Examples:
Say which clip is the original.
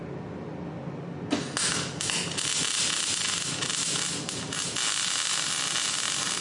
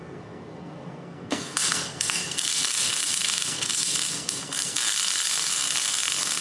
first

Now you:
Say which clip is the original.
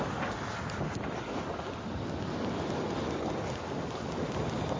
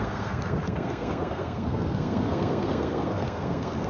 first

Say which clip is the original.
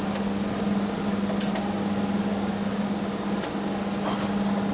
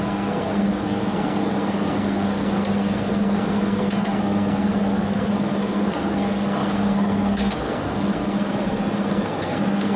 first